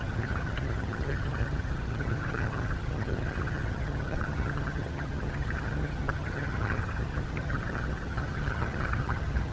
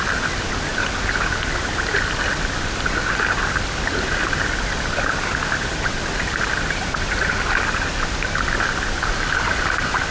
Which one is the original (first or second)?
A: second